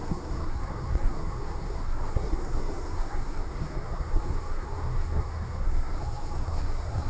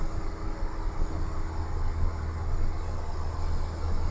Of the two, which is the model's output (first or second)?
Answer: first